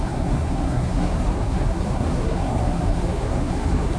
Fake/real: fake